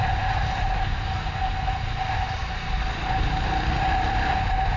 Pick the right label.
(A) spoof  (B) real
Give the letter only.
B